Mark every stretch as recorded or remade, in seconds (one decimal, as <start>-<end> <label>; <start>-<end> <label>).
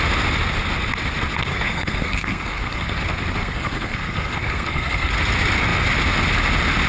0.0-1.5 recorded; 1.5-3.0 remade; 3.0-3.4 recorded; 3.4-5.1 remade; 5.1-6.9 recorded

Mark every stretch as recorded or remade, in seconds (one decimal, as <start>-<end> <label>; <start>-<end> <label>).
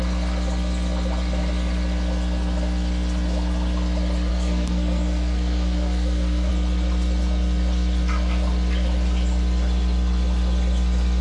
0.0-4.3 recorded; 4.3-6.5 remade; 6.5-11.2 recorded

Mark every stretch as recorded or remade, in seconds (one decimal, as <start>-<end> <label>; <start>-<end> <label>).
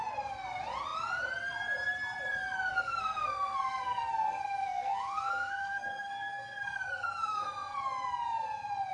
0.0-2.7 recorded; 2.7-7.8 remade; 7.8-8.9 recorded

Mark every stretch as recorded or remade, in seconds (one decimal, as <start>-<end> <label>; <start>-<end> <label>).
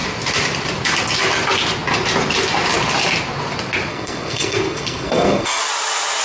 0.0-3.9 recorded; 3.9-5.6 remade; 5.6-6.2 recorded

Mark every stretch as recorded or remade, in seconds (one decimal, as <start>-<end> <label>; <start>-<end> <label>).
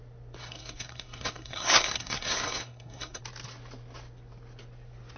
0.0-0.4 recorded; 0.4-3.2 remade; 3.2-5.2 recorded